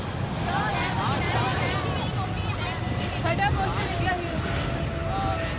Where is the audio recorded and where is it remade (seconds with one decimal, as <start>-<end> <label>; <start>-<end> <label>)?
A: 0.0-5.6 recorded